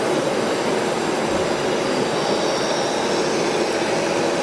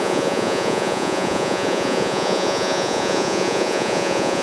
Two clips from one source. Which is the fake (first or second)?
second